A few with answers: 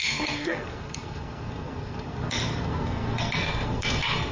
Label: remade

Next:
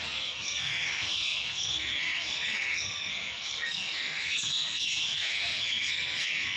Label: remade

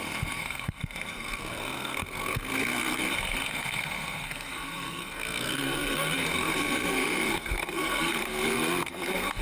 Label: remade